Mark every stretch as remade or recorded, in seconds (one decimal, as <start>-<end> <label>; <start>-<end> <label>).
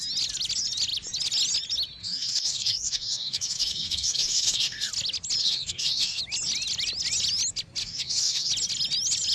0.0-2.0 recorded; 2.0-4.9 remade; 4.9-5.4 recorded; 5.4-6.2 remade; 6.2-7.8 recorded; 7.8-8.5 remade; 8.5-9.3 recorded